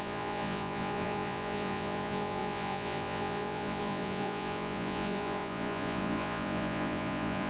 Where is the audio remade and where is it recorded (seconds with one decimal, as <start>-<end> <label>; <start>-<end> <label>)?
0.0-7.5 remade